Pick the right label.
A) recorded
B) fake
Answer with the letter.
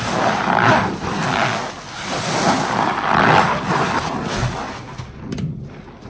A